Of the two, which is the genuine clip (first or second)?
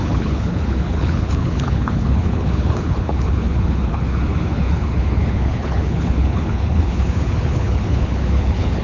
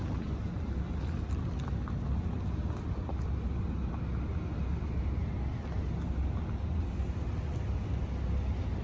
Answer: second